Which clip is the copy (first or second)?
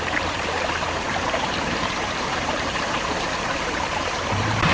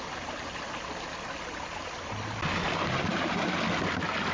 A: first